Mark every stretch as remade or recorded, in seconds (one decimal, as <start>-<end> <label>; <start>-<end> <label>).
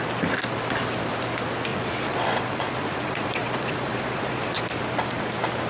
0.0-1.7 recorded; 1.7-4.6 remade; 4.6-5.7 recorded